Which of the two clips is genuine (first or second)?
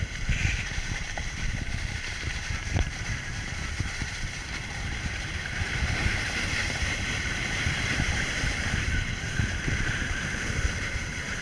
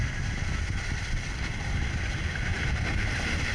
second